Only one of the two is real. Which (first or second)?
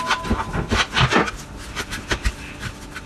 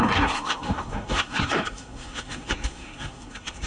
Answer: first